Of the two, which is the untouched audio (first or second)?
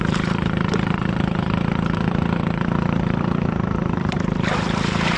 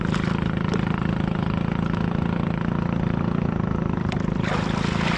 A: second